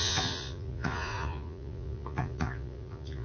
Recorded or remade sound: remade